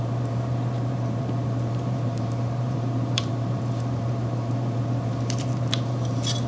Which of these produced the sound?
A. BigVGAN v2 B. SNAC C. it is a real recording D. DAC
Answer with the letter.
A